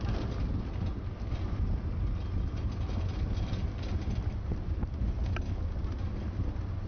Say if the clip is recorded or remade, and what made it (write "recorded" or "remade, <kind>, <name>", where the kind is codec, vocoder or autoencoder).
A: recorded